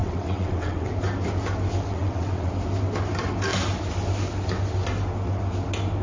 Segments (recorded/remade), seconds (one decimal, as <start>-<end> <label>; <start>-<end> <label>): 0.0-0.9 remade; 0.9-1.9 recorded; 1.9-2.5 remade; 2.5-6.0 recorded